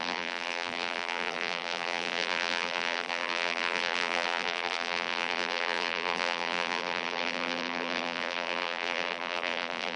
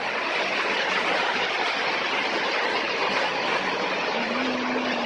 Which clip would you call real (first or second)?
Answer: second